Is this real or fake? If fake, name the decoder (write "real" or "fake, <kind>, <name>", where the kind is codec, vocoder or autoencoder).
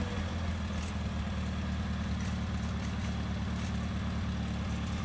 real